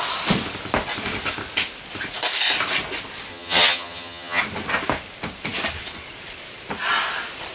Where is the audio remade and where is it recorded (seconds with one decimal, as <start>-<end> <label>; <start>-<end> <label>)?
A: 0.0-3.3 recorded; 3.3-4.4 remade; 4.4-7.5 recorded